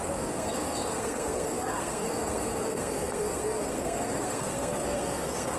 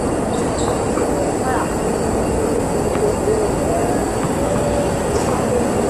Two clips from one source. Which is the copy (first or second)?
first